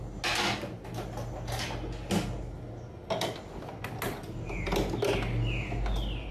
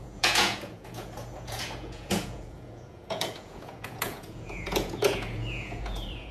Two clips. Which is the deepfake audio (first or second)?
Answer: second